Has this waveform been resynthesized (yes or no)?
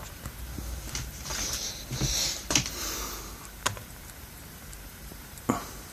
yes